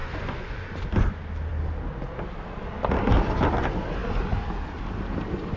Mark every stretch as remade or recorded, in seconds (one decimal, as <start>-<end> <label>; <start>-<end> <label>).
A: 0.0-0.6 remade; 0.6-5.6 recorded